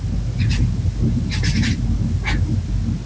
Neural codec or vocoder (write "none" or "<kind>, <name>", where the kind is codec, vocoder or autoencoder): none